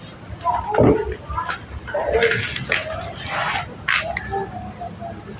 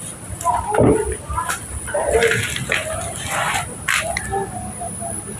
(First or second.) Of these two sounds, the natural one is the first